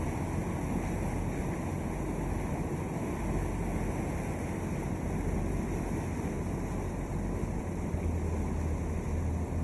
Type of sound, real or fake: real